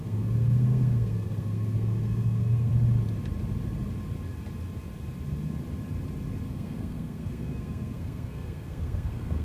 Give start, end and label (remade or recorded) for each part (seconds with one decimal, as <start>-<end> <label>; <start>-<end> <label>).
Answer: 0.0-2.7 remade; 2.7-6.5 recorded; 6.5-9.4 remade